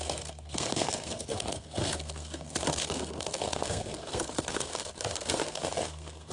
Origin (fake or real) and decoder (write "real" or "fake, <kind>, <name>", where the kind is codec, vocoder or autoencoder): fake, codec, SNAC